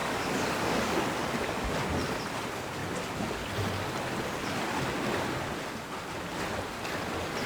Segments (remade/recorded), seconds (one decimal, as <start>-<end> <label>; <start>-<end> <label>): 0.0-1.7 remade; 1.7-7.5 recorded